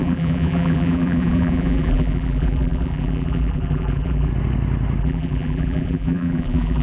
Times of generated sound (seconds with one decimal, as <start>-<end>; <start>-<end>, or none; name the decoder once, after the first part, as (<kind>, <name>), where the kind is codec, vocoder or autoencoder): 0.0-4.3 (vocoder, BigVGAN v2); 5.0-6.8